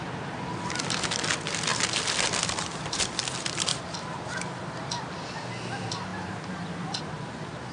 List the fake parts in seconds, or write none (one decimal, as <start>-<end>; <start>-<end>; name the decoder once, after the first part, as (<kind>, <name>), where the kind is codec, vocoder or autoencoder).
3.7-4.2 (vocoder, BigVGAN v2); 6.1-7.0